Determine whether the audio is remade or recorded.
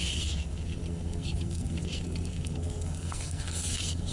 remade